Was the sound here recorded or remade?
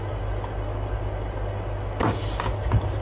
recorded